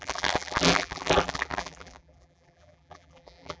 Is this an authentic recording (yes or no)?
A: no